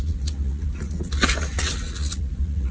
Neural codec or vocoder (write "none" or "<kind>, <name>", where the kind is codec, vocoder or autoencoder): vocoder, Vocos